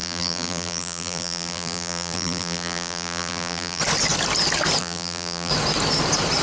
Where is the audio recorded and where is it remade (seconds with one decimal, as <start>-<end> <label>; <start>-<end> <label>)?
0.0-3.8 remade; 3.8-4.8 recorded; 4.8-5.5 remade; 5.5-6.4 recorded